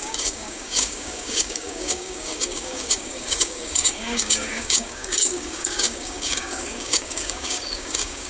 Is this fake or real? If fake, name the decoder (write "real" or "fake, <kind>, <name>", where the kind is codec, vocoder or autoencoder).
fake, codec, DAC